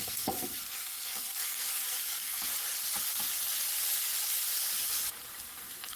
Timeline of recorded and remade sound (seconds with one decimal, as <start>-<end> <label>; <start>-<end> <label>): 0.0-2.5 remade; 2.5-5.4 recorded; 5.4-6.0 remade